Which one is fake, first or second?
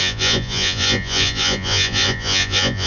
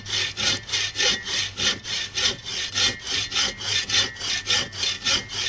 first